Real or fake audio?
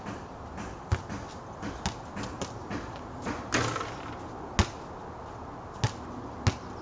real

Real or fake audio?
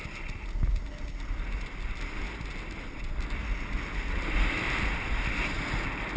real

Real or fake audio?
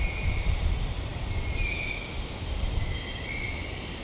real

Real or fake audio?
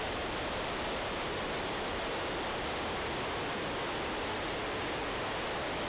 real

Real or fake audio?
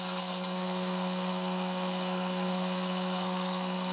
fake